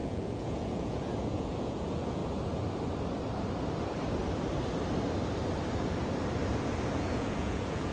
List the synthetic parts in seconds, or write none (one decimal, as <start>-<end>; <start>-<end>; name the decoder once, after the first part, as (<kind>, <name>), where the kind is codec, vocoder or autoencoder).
0.0-2.2 (vocoder, Vocos); 6.9-7.9